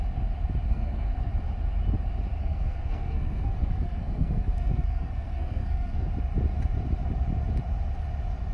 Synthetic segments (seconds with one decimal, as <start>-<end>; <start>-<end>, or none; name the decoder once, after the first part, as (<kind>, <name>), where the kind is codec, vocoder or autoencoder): 0.7-1.3 (codec, SNAC); 2.4-6.1